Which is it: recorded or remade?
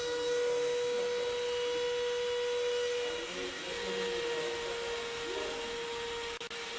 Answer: recorded